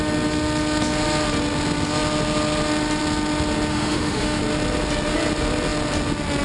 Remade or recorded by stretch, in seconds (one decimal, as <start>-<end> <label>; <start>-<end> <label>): 0.0-3.7 recorded; 3.7-4.4 remade; 4.4-6.4 recorded

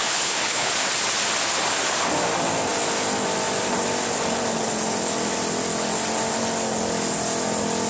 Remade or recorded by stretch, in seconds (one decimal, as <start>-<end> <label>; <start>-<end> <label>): 0.0-0.7 remade; 0.7-7.9 recorded

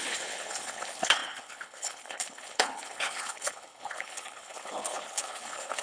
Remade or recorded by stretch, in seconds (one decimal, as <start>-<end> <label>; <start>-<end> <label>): 0.0-5.8 remade

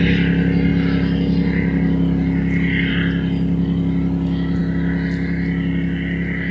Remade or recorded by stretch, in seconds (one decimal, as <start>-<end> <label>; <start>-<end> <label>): 0.0-6.5 recorded

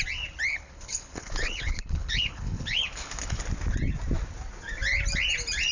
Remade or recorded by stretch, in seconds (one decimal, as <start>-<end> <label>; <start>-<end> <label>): 0.0-0.5 recorded; 0.5-3.4 remade; 3.4-5.7 recorded